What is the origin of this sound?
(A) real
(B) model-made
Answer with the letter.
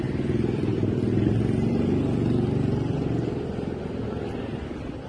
A